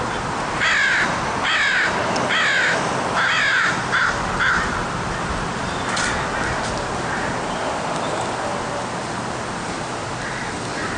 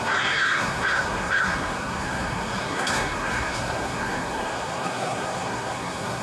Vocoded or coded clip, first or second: second